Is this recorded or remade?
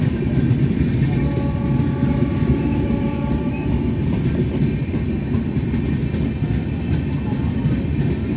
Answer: recorded